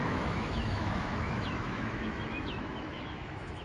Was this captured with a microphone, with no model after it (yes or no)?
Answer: no